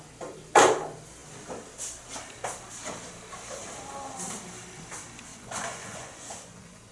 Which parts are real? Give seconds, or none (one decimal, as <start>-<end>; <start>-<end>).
0.0-5.3